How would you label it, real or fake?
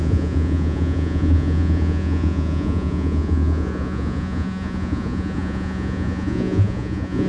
fake